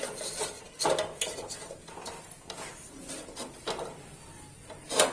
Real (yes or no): yes